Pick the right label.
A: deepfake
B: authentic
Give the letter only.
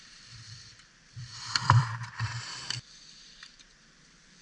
A